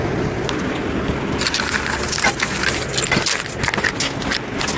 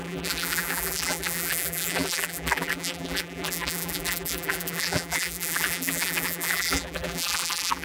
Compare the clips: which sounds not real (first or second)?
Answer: second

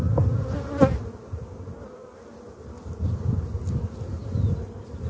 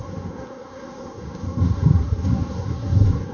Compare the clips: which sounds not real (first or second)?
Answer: second